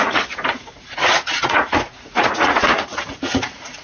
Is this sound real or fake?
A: fake